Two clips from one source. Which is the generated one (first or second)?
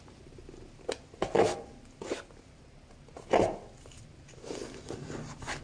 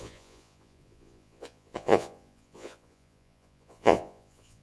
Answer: second